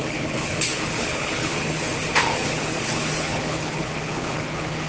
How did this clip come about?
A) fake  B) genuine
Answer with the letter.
A